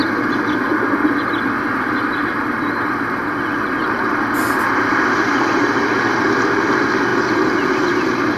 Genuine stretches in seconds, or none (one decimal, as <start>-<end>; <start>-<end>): 0.0-8.4